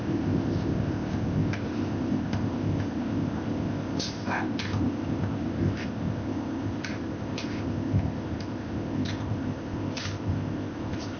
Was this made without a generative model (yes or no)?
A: no